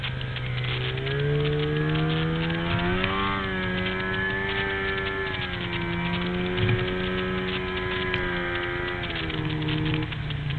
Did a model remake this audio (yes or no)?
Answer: no